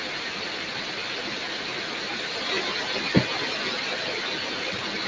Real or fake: real